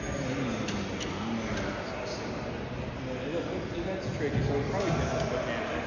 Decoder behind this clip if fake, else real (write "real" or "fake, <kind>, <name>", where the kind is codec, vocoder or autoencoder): real